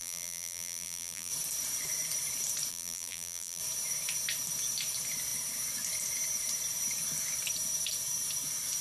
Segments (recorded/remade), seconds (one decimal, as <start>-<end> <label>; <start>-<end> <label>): 0.0-1.3 remade; 1.3-2.7 recorded; 2.7-3.6 remade; 3.6-8.8 recorded